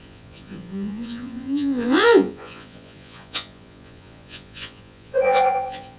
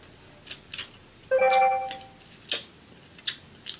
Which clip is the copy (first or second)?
first